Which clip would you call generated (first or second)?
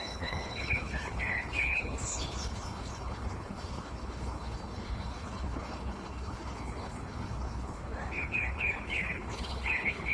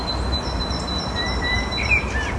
first